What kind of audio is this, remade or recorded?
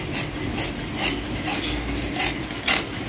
recorded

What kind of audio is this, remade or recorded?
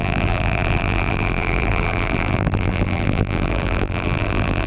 remade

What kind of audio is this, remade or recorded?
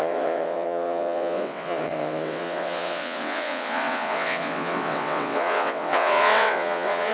remade